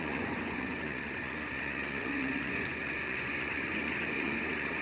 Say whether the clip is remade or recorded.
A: remade